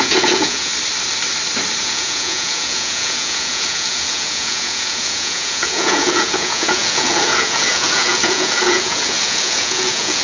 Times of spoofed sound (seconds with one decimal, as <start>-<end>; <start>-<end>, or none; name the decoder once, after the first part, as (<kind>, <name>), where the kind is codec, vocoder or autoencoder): 0.0-0.7 (vocoder, Vocos); 1.8-10.2